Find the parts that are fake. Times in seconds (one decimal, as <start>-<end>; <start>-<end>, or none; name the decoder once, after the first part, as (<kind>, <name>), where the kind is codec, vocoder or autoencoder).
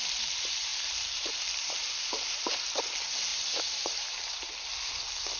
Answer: 0.7-2.5 (vocoder, BigVGAN v2); 3.3-4.5